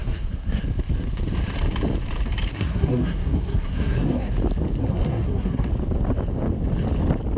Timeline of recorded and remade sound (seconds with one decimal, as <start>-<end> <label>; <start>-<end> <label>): 0.0-0.6 remade; 0.6-2.5 recorded; 2.5-4.3 remade; 4.3-4.8 recorded; 4.8-5.7 remade; 5.7-7.4 recorded